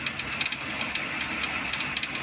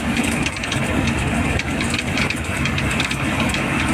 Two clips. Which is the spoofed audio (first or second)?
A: second